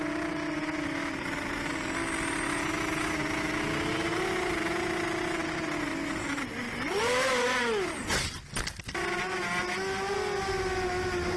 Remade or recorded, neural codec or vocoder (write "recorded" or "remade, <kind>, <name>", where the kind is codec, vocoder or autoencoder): recorded